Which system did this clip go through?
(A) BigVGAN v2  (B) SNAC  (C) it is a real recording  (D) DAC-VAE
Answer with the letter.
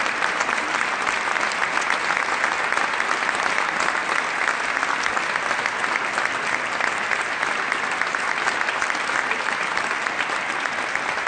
C